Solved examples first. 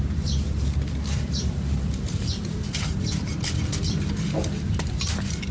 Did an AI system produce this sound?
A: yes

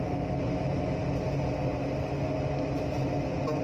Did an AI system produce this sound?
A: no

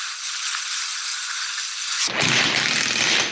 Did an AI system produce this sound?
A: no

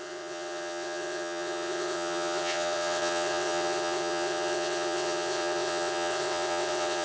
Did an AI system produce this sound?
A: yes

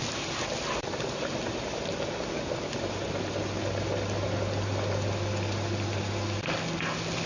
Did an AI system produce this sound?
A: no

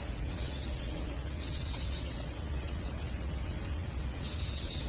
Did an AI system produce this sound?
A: yes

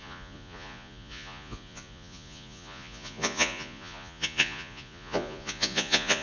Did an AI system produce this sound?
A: yes